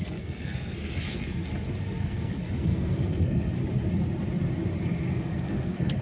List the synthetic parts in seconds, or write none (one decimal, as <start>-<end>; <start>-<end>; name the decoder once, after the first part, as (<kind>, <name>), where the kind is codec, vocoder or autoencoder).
0.0-1.4 (codec, SNAC); 2.0-3.6; 5.1-6.0